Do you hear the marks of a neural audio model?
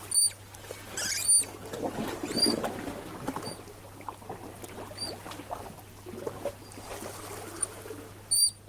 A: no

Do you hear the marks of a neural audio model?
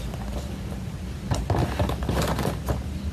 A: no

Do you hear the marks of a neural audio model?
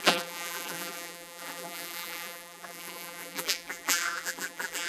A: yes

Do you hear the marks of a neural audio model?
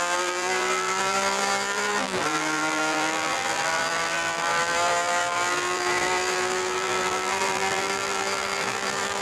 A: yes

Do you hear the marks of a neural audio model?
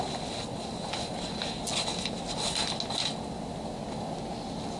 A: no